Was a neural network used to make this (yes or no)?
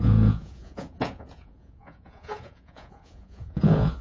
yes